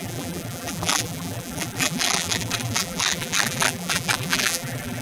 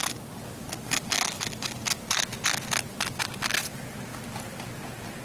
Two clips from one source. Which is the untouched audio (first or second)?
second